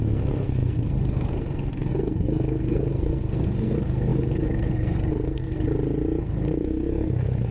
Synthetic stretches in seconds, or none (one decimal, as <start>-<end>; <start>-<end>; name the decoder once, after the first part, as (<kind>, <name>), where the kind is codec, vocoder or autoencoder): 0.0-5.7 (codec, SNAC); 6.2-7.5